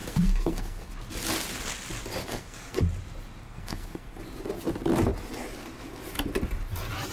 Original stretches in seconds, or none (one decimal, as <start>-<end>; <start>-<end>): 0.9-2.2; 2.8-3.4; 4.2-7.1